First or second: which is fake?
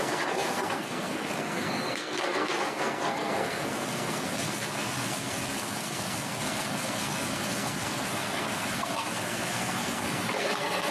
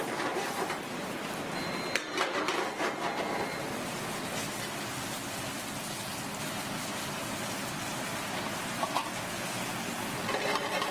first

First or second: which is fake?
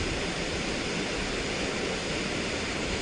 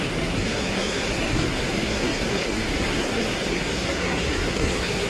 second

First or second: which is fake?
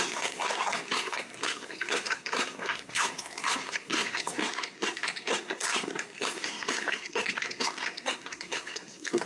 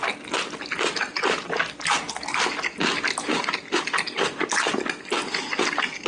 first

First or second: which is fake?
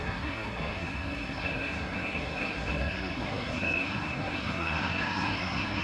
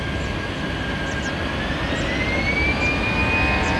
first